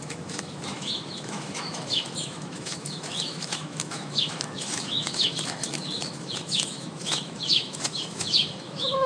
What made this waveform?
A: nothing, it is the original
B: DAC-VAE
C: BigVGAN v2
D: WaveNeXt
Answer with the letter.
B